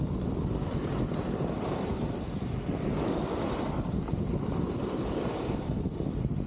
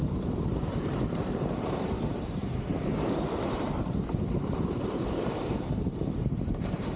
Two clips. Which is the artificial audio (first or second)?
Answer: second